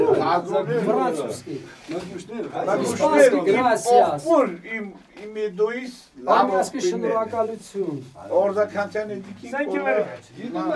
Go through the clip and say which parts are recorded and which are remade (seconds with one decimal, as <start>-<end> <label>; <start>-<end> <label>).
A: 0.0-6.2 recorded; 6.2-8.1 remade; 8.1-10.8 recorded